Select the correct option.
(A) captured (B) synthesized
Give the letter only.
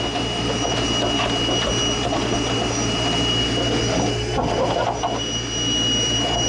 A